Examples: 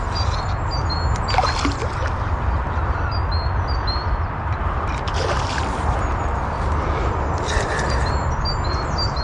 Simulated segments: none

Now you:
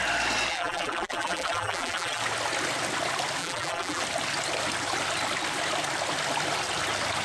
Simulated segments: 0.5-2.2 (vocoder, BigVGAN v2); 3.4-4.0

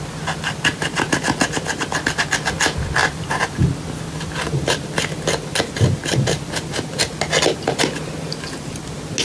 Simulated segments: 3.0-7.0 (vocoder, BigVGAN v2)

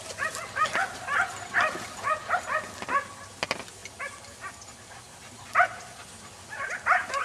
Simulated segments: none

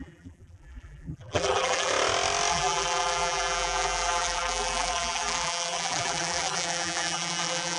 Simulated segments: 0.0-1.9 (vocoder, BigVGAN v2); 2.5-7.8

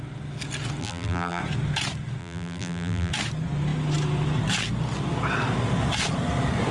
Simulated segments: 0.8-1.4 (vocoder, BigVGAN v2); 2.2-3.1